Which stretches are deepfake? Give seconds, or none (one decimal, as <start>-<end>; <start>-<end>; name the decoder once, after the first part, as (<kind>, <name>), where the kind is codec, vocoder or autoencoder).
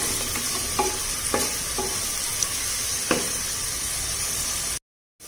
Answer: 0.6-1.4 (vocoder, BigVGAN v2); 2.9-4.3